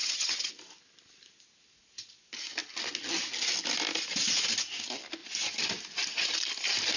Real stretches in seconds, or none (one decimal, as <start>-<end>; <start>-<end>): 0.5-7.0

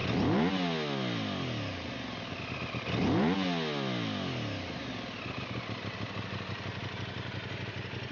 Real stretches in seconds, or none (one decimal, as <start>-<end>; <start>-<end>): 0.0-8.1

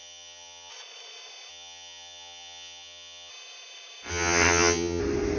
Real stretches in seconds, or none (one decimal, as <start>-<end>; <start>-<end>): 0.7-1.5; 3.3-4.1; 5.0-5.4

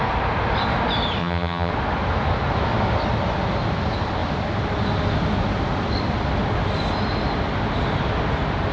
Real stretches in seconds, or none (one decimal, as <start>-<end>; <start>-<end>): 0.0-1.2; 1.7-8.7

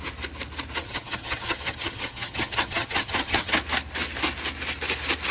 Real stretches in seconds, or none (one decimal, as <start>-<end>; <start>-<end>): 0.0-0.8; 3.5-5.3

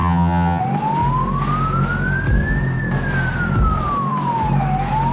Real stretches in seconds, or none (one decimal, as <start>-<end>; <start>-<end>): 0.6-5.1